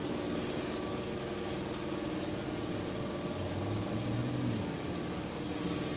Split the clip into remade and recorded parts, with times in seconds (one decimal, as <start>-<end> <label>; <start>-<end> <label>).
0.0-6.0 recorded